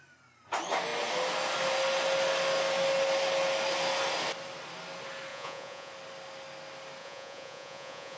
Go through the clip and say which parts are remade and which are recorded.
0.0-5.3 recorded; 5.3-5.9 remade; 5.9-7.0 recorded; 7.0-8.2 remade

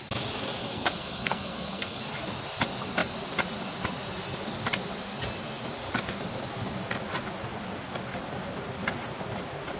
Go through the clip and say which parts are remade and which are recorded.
0.0-0.6 recorded; 0.6-2.0 remade; 2.0-9.8 recorded

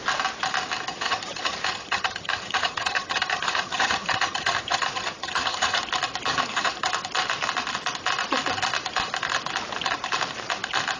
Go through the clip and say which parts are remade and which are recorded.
0.0-0.9 recorded; 0.9-5.8 remade; 5.8-6.3 recorded; 6.3-6.9 remade; 6.9-11.0 recorded

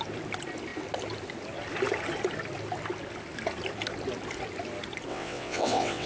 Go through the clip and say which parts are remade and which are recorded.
0.0-5.1 recorded; 5.1-6.1 remade

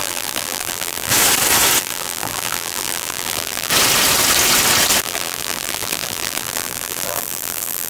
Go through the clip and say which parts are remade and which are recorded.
0.0-1.1 remade; 1.1-1.8 recorded; 1.8-3.7 remade; 3.7-5.0 recorded; 5.0-7.9 remade